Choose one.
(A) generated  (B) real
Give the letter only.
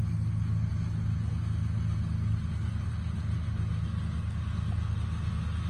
B